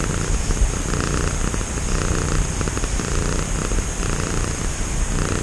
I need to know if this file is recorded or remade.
remade